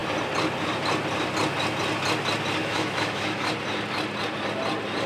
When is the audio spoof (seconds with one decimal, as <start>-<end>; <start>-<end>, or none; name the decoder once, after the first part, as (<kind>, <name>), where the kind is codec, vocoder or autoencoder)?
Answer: 2.6-3.5 (autoencoder, DAC-VAE)